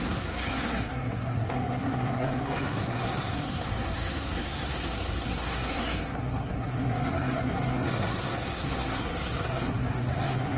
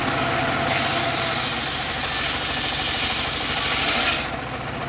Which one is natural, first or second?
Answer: second